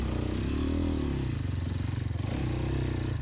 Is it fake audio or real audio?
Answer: real